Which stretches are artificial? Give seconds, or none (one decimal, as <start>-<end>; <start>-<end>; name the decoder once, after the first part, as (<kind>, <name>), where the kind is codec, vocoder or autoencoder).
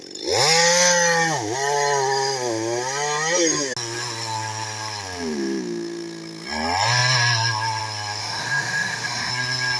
8.2-9.3 (autoencoder, DAC-VAE)